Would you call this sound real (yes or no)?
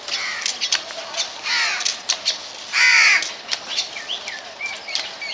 yes